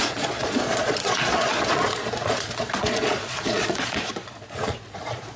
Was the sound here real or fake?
fake